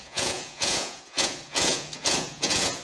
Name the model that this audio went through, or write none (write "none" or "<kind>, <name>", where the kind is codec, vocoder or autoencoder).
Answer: vocoder, Vocos